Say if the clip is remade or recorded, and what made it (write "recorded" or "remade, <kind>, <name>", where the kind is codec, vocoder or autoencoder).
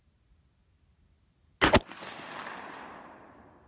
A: recorded